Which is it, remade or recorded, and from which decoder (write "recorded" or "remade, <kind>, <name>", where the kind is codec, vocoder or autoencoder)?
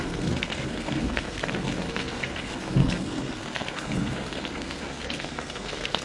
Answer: remade, codec, SNAC